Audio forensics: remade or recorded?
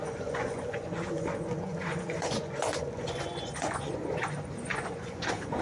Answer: remade